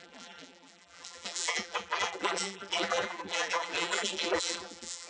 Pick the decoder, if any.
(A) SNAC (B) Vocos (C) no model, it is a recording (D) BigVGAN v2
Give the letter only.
D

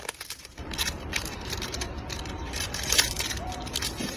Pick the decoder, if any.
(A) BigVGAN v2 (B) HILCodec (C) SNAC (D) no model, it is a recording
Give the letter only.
A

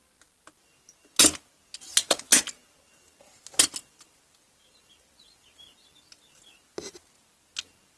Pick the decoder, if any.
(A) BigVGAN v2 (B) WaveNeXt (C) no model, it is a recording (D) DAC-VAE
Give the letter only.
C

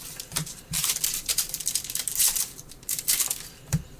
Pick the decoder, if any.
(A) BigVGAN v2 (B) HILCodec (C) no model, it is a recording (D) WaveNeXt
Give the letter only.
A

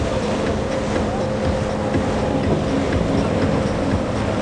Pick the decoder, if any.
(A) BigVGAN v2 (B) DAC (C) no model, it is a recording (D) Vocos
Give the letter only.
C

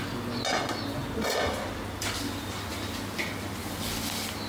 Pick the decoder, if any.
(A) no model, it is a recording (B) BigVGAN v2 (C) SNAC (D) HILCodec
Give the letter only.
A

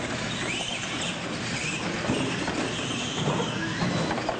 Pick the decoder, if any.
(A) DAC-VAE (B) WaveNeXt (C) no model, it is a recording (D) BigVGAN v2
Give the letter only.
C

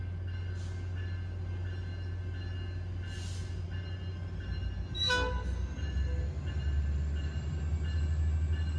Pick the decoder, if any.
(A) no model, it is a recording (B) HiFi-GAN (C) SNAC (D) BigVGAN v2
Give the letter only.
A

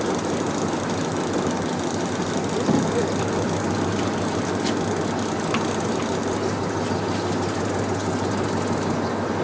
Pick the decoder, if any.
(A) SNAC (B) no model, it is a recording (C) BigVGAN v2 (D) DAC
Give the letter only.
B